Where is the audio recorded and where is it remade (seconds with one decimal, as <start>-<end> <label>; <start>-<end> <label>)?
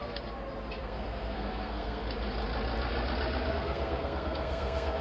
0.0-0.8 recorded; 0.8-2.0 remade; 2.0-3.5 recorded; 3.5-5.0 remade